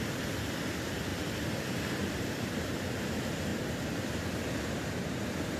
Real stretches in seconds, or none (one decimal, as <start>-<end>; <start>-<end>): 0.0-1.1; 2.5-3.5